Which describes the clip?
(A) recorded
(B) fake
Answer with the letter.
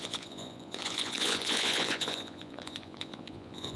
B